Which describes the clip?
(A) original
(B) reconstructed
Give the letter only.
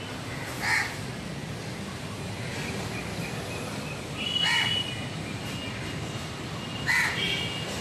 A